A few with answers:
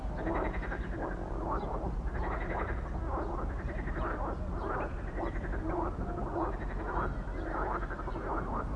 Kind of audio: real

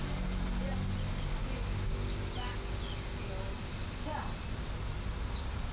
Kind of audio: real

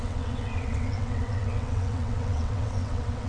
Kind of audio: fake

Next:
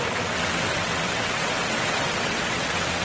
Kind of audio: fake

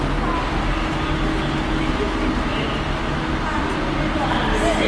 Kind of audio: real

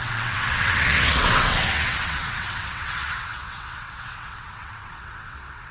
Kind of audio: fake